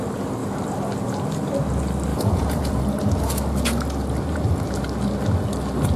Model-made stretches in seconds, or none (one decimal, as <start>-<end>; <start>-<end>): 2.1-2.8